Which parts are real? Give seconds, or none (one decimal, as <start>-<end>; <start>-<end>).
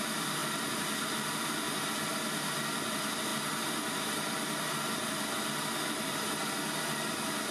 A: 0.0-7.5